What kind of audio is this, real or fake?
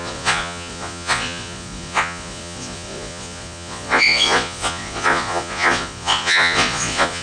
fake